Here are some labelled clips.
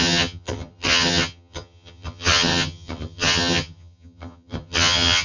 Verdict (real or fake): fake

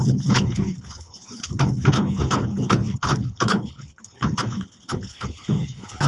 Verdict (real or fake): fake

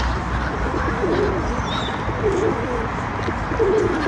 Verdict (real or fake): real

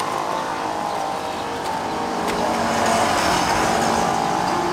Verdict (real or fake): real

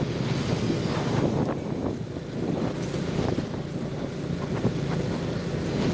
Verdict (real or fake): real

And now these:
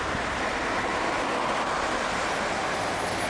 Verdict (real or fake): real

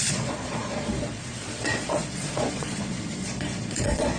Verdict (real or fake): fake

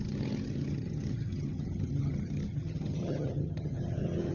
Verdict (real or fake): fake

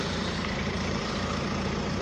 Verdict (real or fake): fake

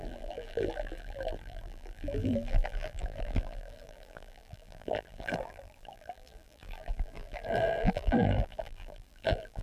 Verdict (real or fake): fake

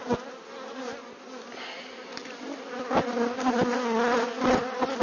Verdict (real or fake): real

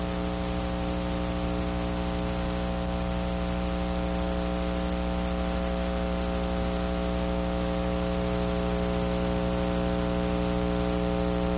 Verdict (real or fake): real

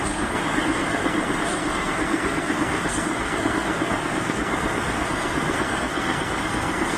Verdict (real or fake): fake